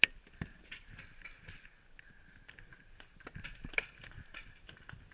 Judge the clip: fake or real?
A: real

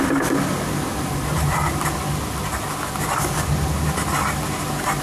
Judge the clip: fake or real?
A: real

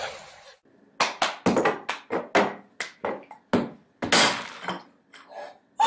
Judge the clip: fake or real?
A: real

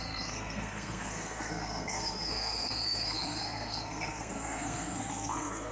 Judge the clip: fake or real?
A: fake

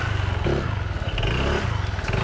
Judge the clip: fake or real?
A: real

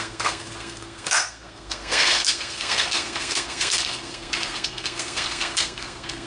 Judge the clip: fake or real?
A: fake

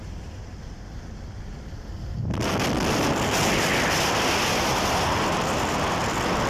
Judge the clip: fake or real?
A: real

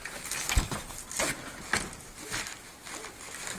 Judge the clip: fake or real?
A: real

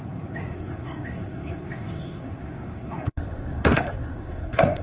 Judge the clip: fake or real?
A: fake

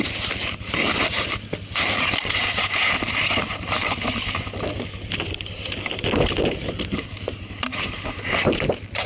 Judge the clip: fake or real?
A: real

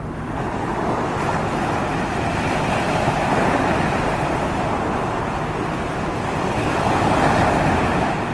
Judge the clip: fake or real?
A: real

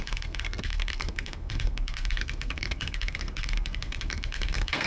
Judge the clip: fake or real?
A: fake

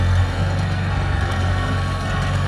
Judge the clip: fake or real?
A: fake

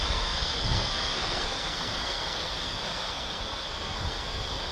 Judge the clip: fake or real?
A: fake